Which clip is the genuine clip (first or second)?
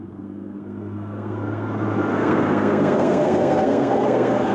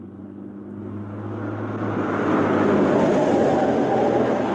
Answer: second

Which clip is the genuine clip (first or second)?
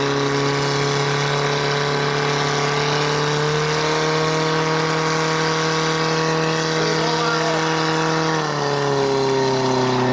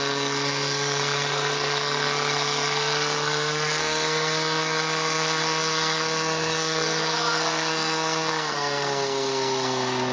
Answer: first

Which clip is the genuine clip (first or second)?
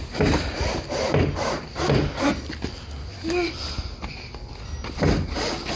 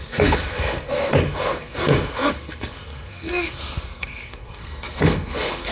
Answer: first